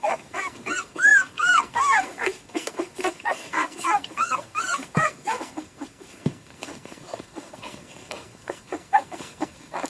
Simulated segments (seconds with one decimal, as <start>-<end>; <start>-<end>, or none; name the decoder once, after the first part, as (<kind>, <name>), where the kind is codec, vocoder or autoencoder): 0.0-9.9 (codec, SNAC)